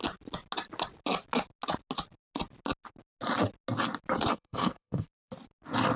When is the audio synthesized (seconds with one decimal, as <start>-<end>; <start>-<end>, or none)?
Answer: 4.3-5.3

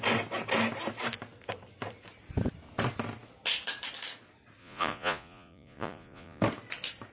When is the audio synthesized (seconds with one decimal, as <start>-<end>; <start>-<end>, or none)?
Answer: 4.6-6.4